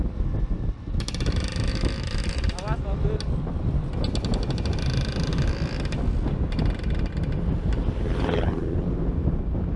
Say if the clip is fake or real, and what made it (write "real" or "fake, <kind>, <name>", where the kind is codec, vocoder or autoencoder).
real